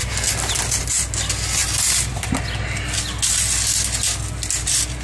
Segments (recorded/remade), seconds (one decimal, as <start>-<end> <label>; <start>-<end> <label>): 0.0-5.0 recorded